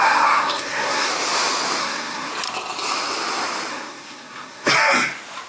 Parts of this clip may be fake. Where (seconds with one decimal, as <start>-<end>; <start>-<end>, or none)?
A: 0.0-1.1; 1.8-2.3; 3.7-4.7